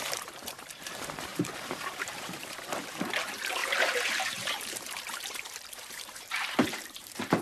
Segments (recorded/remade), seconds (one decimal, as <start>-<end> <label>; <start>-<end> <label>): 0.0-7.4 remade